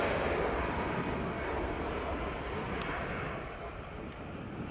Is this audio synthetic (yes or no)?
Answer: no